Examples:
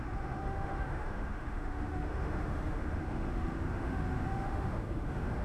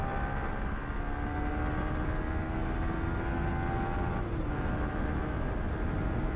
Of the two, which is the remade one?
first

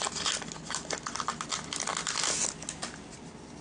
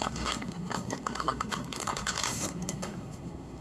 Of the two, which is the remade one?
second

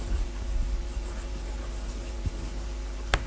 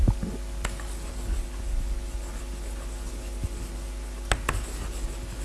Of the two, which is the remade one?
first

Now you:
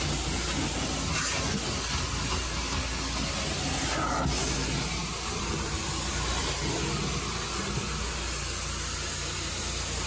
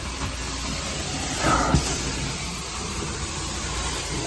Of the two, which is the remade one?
second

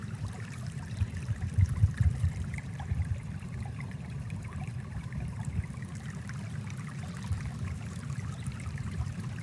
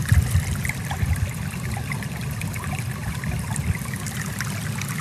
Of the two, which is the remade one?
first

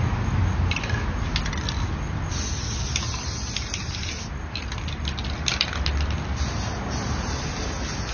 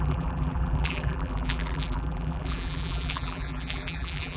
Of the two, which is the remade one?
second